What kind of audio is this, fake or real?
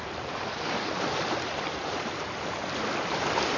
real